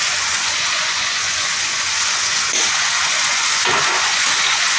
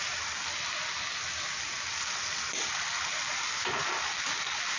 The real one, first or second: second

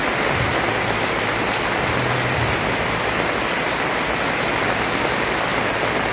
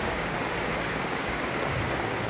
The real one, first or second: first